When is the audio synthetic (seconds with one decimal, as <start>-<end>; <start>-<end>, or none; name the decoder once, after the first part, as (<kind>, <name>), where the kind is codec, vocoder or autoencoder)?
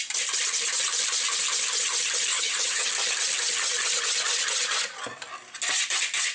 2.3-2.9 (vocoder, HiFi-GAN)